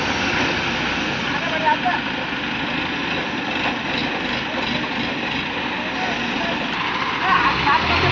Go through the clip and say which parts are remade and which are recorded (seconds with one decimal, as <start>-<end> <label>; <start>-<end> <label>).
0.0-8.1 recorded